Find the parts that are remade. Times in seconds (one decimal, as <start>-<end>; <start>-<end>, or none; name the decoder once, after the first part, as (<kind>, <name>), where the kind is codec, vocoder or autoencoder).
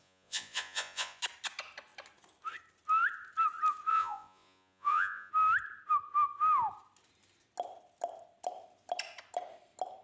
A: 0.0-1.2 (vocoder, Vocos); 3.9-5.3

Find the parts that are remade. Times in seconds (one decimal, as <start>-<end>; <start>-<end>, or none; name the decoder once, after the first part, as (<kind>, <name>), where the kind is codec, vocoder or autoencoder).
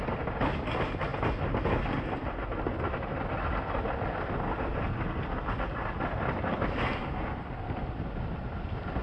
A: none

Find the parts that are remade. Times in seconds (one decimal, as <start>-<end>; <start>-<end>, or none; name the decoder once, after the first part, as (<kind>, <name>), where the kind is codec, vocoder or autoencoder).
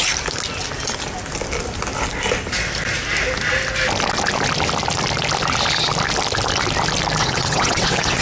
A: 7.2-8.2 (vocoder, WaveNeXt)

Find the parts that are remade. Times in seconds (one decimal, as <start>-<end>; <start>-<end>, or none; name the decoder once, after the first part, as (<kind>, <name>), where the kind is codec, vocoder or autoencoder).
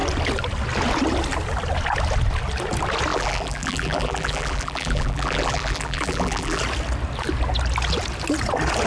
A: 3.1-6.6 (vocoder, BigVGAN v2)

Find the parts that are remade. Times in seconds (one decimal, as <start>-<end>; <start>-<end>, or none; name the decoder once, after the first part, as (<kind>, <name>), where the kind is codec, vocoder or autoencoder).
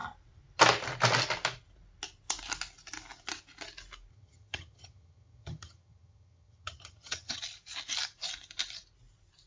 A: 4.1-7.4 (vocoder, HiFi-GAN)